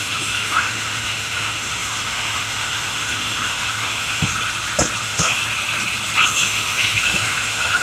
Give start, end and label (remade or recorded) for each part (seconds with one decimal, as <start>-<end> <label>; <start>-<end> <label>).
0.0-4.3 remade; 4.3-5.0 recorded; 5.0-5.4 remade; 5.4-6.3 recorded; 6.3-7.8 remade